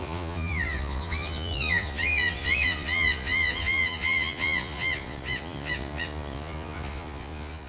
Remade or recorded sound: remade